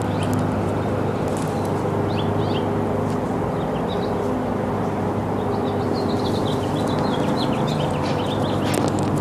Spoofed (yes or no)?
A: no